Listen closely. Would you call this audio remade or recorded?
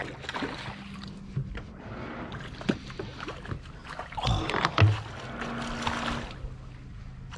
recorded